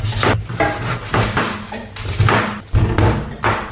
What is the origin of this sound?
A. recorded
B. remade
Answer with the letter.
A